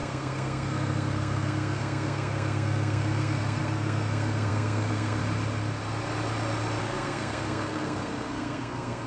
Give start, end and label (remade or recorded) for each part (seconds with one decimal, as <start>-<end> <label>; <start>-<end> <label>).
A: 0.0-5.2 remade; 5.2-6.8 recorded; 6.8-9.1 remade